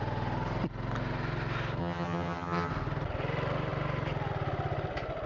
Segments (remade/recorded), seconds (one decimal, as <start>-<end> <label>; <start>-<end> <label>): 0.0-1.8 recorded; 1.8-2.7 remade; 2.7-5.3 recorded